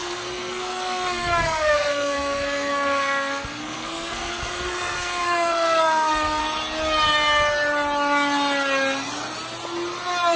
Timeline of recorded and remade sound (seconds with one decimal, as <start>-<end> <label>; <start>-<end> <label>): 0.0-6.4 remade; 6.4-10.4 recorded